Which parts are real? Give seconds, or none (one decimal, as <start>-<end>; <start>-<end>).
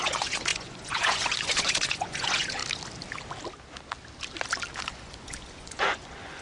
2.6-4.9